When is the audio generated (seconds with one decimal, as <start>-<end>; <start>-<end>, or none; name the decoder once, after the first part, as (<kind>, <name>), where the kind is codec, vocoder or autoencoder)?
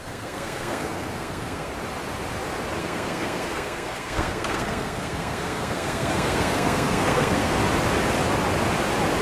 0.0-1.7 (codec, SNAC); 2.8-7.6